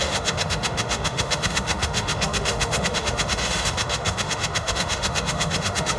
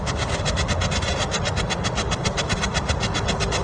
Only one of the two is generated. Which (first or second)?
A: first